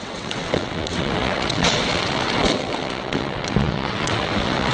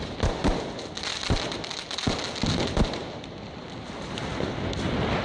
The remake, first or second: first